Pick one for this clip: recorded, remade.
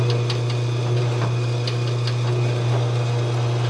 recorded